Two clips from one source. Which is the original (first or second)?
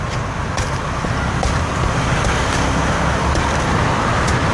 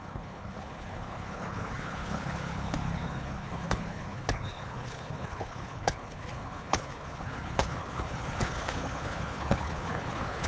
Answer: first